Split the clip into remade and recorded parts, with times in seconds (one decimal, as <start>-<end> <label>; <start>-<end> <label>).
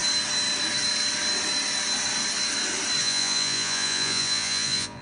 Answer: 0.0-3.0 recorded; 3.0-5.0 remade